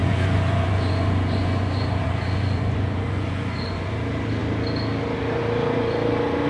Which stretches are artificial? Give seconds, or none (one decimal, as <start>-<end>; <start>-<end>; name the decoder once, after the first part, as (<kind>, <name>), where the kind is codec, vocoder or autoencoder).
0.0-3.9 (vocoder, Vocos)